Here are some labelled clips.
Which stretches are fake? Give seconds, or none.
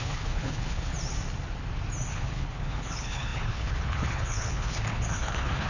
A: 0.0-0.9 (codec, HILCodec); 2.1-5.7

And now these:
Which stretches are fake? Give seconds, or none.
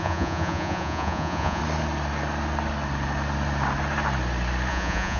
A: 0.0-1.6 (vocoder, Vocos); 4.7-5.2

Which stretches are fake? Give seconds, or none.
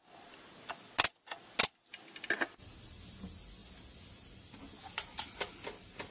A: none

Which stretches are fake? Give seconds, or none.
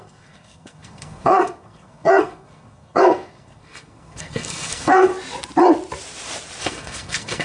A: 0.0-5.1 (codec, SNAC); 6.6-7.4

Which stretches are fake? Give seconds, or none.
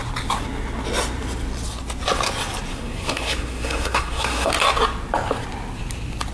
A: 2.7-4.5 (codec, SNAC)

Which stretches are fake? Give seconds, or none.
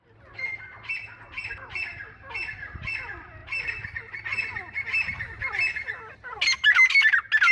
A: none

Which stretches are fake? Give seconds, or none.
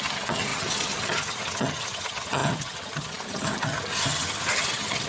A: 0.0-5.1 (vocoder, HiFi-GAN)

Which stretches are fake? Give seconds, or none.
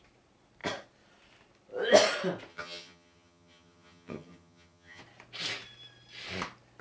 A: 2.5-5.0 (vocoder, HiFi-GAN)